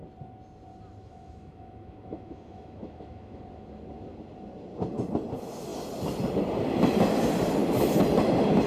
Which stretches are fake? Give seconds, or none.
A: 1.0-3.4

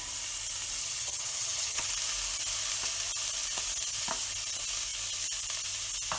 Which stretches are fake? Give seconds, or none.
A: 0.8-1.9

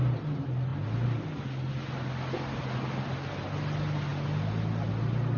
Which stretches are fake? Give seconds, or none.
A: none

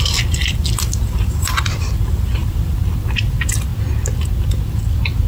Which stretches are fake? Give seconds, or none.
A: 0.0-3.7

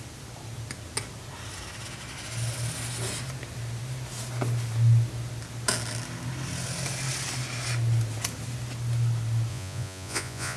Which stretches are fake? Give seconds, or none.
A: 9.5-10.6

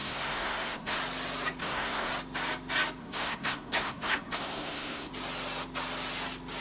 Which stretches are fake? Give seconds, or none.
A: 0.0-1.0; 1.6-2.1; 3.0-5.1

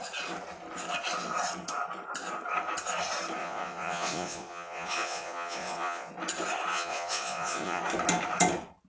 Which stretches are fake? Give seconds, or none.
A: 3.4-6.1; 6.7-7.8